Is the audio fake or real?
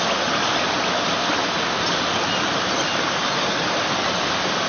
real